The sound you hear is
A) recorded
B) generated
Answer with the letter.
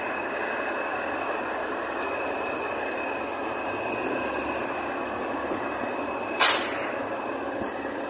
A